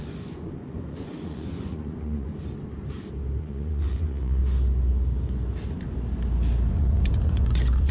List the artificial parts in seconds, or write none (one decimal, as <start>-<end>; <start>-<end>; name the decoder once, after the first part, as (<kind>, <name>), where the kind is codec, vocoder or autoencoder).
0.0-2.3 (vocoder, Vocos); 3.4-4.4; 6.7-7.9